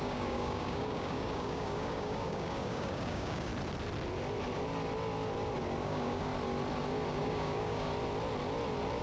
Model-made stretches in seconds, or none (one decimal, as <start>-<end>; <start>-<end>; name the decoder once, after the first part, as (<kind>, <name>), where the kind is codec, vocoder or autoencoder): 0.0-3.5 (codec, DAC); 5.8-6.3; 7.1-7.9

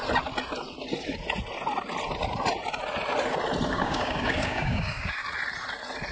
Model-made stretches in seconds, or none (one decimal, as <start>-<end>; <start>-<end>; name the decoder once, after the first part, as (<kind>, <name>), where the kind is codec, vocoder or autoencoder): 3.7-5.2 (codec, DAC)

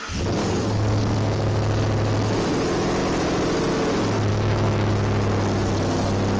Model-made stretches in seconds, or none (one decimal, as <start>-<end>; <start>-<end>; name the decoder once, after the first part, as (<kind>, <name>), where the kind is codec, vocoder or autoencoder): 0.4-1.8 (codec, DAC); 4.3-4.9